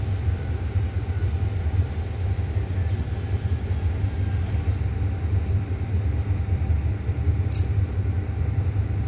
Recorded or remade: recorded